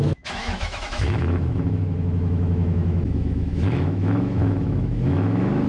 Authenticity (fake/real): fake